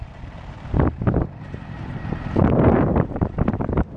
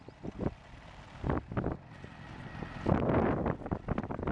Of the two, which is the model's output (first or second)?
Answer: first